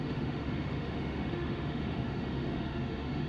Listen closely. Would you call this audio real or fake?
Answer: fake